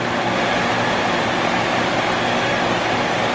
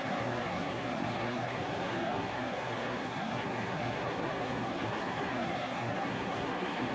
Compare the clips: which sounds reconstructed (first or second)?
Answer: second